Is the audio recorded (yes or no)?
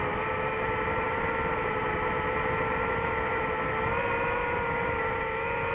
yes